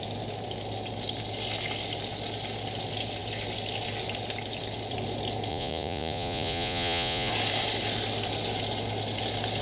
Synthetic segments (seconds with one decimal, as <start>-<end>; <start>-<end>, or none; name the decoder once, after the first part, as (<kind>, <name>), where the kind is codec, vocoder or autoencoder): 5.5-7.3 (vocoder, Vocos)